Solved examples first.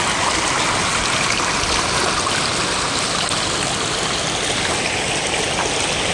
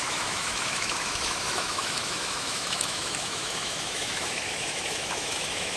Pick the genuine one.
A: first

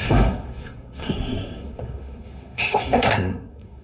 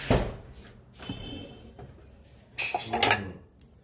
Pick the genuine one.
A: second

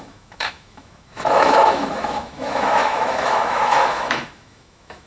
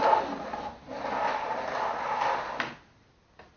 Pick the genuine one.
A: second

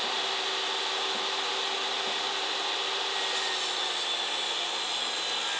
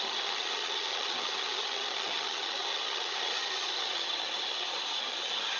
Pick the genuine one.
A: first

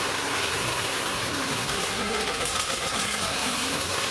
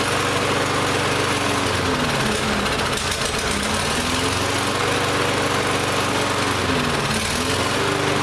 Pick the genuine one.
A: second